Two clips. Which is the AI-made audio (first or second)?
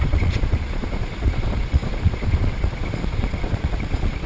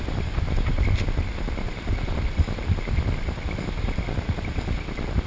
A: first